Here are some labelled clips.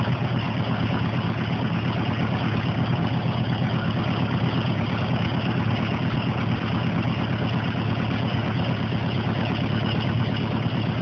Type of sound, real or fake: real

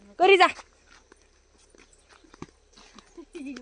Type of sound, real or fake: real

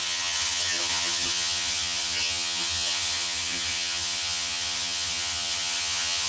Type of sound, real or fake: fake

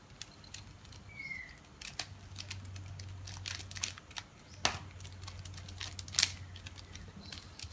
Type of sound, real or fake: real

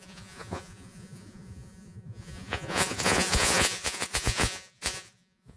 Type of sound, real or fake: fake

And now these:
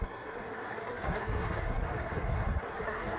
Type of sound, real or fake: fake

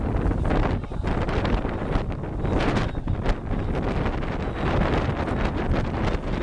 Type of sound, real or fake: real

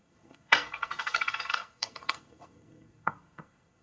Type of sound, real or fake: fake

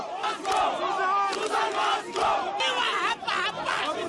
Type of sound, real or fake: real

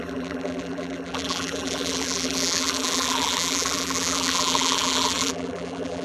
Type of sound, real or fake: fake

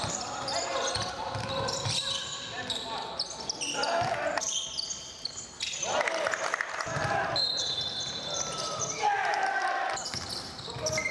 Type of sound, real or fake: real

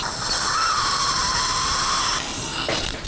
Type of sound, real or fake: real